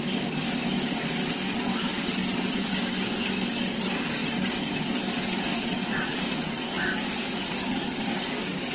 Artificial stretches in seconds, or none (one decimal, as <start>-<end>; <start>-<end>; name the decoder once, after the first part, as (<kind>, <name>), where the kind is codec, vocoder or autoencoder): 0.0-8.7 (codec, DAC)